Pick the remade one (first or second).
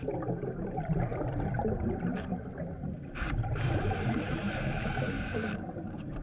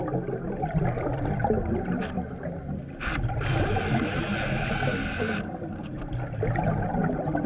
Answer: first